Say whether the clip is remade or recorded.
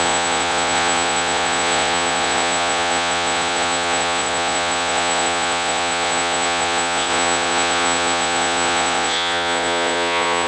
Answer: remade